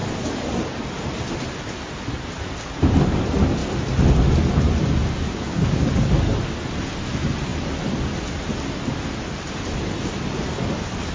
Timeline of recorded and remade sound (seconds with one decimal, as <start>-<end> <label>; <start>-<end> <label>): 0.0-0.6 remade; 0.6-5.0 recorded; 5.0-5.9 remade; 5.9-11.1 recorded